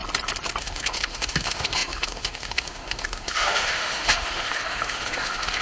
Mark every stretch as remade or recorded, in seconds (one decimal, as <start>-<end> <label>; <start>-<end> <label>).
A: 0.0-0.6 recorded; 0.6-5.6 remade